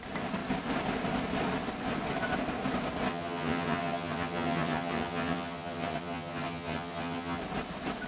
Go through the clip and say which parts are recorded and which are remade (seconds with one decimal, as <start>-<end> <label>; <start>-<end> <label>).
0.0-3.1 recorded; 3.1-7.4 remade; 7.4-8.1 recorded